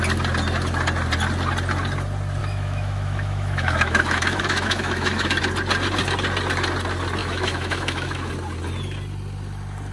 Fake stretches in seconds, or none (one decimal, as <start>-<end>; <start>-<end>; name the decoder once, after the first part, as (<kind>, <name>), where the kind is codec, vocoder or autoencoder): 2.4-5.4 (autoencoder, DAC-VAE); 7.2-8.3